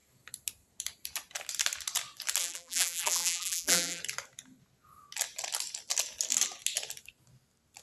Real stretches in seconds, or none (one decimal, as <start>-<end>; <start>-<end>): 0.0-2.4; 4.0-7.8